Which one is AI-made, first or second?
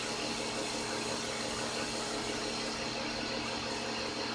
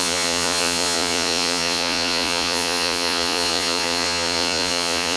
second